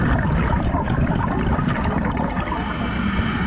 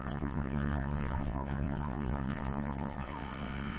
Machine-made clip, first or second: second